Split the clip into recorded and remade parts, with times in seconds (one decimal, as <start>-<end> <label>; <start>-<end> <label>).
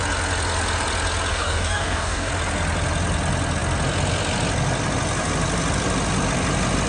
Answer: 0.0-1.3 recorded; 1.3-2.3 remade; 2.3-6.9 recorded